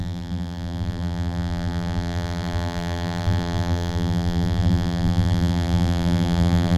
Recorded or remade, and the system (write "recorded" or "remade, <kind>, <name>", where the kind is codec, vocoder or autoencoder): remade, vocoder, BigVGAN v2